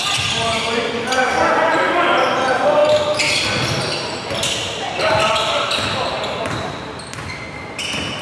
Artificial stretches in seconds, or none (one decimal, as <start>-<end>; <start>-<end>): none